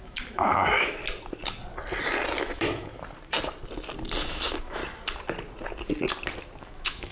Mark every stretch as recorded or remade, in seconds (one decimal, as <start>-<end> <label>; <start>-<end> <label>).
0.0-1.0 remade; 1.0-2.4 recorded; 2.4-2.9 remade; 2.9-4.2 recorded; 4.2-4.8 remade; 4.8-6.6 recorded; 6.6-7.1 remade